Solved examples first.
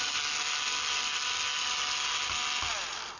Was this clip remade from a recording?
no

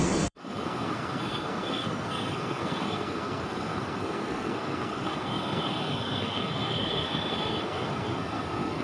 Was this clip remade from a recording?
yes